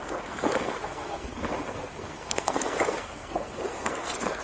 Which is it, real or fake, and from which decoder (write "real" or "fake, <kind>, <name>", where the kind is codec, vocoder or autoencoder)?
fake, codec, SNAC